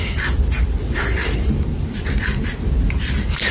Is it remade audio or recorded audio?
remade